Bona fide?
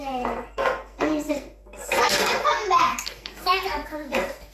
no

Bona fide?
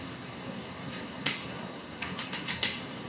no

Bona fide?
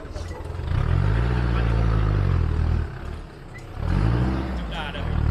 yes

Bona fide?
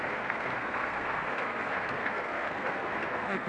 no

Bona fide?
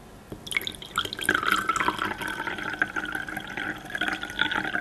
yes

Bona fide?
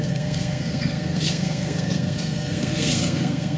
no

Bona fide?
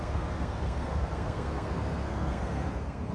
no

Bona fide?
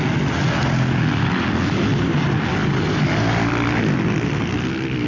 yes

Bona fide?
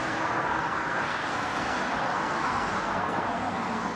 no